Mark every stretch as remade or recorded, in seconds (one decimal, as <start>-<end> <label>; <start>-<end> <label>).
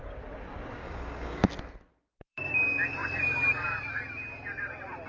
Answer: 0.0-0.8 recorded; 0.8-1.5 remade; 1.5-1.9 recorded; 1.9-2.5 remade; 2.5-5.1 recorded